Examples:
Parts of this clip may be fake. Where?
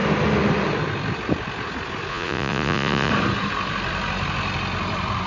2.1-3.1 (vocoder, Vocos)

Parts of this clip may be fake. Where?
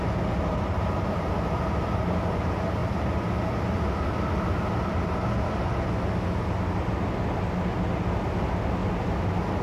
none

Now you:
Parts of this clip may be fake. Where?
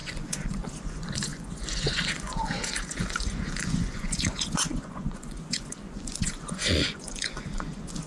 0.0-8.1 (vocoder, Vocos)